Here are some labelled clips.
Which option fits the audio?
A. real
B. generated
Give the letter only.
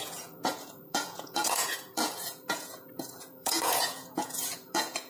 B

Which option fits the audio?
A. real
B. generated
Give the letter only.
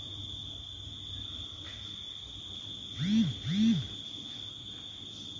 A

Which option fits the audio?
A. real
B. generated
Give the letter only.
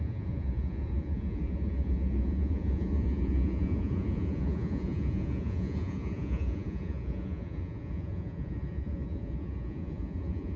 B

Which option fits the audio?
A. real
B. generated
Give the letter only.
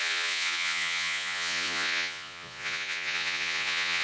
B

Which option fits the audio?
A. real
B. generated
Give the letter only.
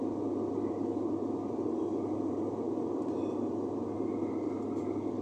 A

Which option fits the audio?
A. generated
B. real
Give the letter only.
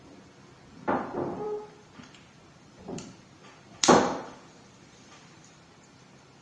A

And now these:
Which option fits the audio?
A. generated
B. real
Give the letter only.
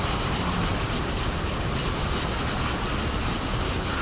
B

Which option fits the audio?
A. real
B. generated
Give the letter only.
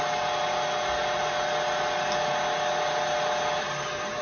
A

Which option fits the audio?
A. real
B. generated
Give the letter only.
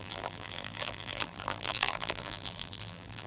B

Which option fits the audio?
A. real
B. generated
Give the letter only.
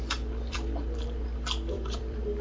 B